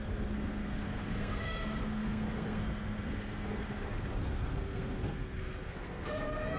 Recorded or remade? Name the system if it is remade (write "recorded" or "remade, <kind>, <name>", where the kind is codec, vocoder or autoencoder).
remade, codec, SNAC